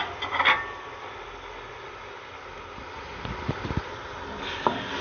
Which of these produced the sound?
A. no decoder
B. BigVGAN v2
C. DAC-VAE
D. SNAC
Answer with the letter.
A